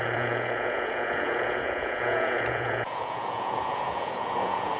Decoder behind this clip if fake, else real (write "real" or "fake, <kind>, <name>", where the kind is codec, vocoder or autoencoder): fake, vocoder, Vocos